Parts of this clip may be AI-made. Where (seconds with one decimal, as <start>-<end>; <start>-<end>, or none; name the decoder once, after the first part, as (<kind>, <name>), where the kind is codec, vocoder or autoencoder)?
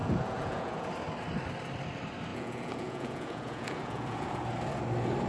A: 0.0-0.9 (vocoder, Vocos); 2.3-4.3